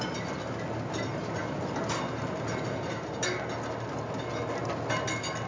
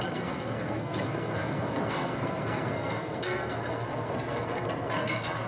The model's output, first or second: second